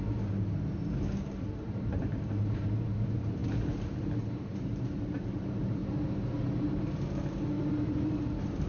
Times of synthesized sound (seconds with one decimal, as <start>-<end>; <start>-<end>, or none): 0.0-3.4; 4.0-8.7